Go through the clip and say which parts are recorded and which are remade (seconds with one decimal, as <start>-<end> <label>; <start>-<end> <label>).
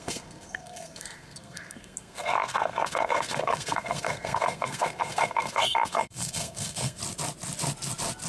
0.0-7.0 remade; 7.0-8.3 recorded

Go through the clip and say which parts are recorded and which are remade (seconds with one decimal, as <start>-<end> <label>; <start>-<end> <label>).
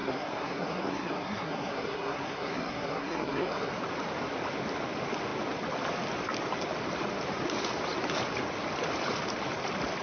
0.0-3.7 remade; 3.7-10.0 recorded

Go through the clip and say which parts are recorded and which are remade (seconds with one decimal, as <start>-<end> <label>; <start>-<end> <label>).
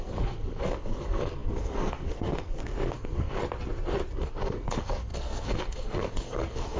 0.0-3.4 remade; 3.4-4.1 recorded; 4.1-6.8 remade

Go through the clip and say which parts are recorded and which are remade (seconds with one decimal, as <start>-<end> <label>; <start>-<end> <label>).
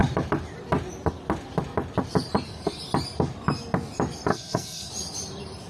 0.0-4.3 recorded; 4.3-4.9 remade; 4.9-5.7 recorded